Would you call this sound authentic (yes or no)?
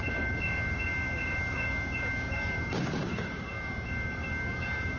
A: no